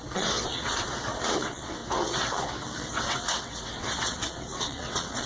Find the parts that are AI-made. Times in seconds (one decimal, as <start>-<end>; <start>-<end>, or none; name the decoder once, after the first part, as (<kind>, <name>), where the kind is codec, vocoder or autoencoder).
0.0-5.3 (vocoder, WaveNeXt)